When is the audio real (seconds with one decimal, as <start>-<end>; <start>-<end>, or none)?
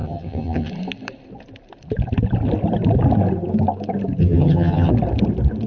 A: 0.7-4.2; 4.9-5.7